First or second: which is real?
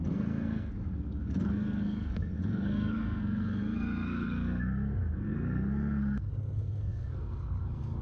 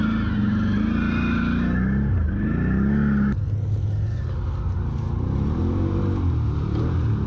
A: second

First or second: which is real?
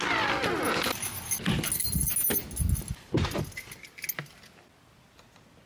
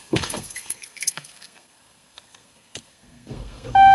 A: first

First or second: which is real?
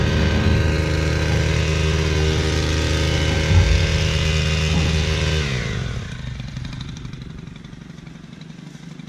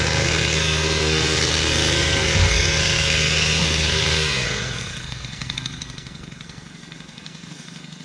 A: first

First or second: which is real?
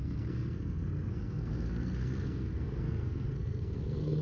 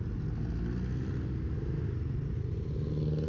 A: second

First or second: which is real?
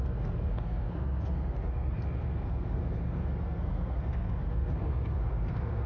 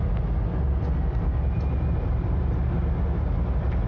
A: second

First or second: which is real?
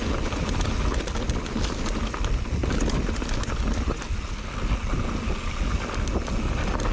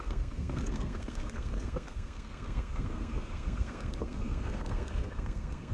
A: first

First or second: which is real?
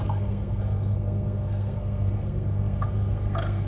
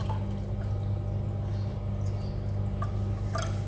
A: second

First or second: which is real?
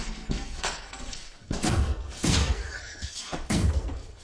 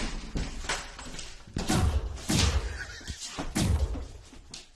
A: second